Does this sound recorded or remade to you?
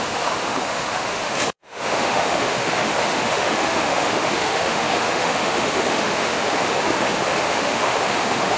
remade